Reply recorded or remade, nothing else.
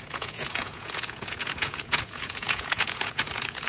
remade